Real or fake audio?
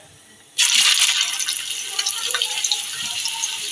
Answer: real